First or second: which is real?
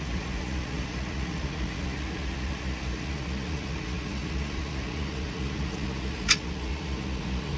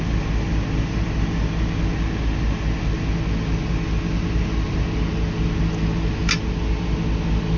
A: second